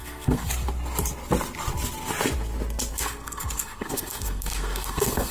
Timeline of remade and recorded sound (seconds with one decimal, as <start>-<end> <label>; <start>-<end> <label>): 0.0-0.5 remade; 0.5-2.9 recorded; 2.9-5.3 remade